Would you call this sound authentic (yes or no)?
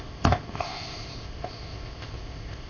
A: no